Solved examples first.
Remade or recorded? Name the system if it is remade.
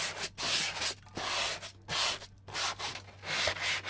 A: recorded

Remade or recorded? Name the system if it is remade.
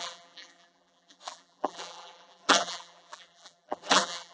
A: remade, vocoder, BigVGAN v2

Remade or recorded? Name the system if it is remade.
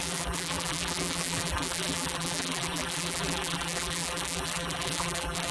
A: remade, vocoder, BigVGAN v2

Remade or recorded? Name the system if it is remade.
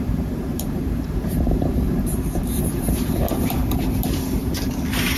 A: remade, vocoder, BigVGAN v2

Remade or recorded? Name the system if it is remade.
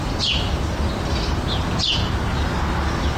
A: recorded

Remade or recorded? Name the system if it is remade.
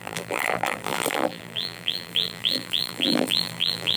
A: remade, vocoder, BigVGAN v2